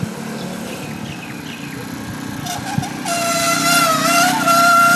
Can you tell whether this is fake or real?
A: real